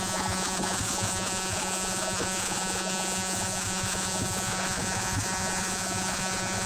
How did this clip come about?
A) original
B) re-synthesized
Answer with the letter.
B